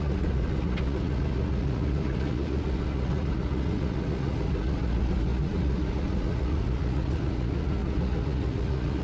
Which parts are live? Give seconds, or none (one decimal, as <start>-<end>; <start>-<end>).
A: none